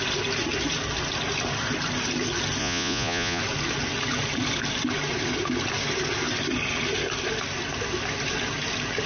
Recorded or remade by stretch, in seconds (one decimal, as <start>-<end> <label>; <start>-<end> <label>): 0.0-2.6 recorded; 2.6-3.4 remade; 3.4-9.1 recorded